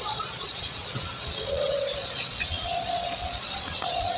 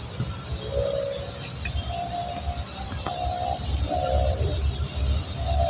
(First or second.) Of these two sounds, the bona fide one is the second